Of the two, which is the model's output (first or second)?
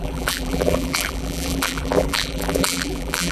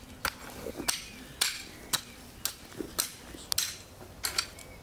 first